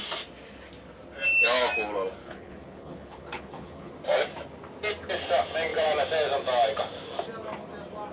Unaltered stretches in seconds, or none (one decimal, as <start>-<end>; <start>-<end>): 0.0-2.2; 3.9-8.1